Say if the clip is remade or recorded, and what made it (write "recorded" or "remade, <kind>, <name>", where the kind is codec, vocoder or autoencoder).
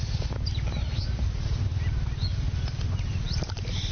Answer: recorded